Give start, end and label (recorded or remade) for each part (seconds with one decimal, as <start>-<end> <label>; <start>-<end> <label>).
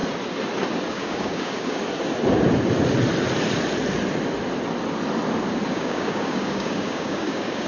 0.0-0.9 recorded; 0.9-1.8 remade; 1.8-5.7 recorded; 5.7-7.7 remade